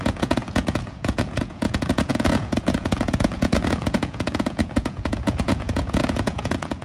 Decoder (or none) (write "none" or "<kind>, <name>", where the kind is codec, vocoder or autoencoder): vocoder, Vocos